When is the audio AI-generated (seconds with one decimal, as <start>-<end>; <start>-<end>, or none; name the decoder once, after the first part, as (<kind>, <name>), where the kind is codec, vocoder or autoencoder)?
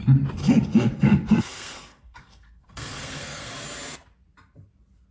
0.4-3.5 (codec, SNAC)